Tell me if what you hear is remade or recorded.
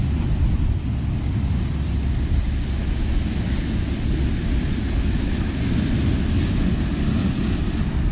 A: recorded